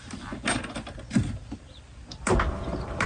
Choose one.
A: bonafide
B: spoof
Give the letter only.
A